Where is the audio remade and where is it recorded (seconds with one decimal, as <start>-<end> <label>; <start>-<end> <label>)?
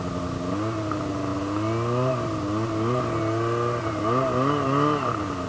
0.0-5.5 recorded